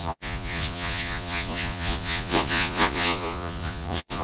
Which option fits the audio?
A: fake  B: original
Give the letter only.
A